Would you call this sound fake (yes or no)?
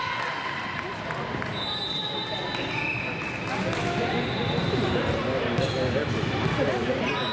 no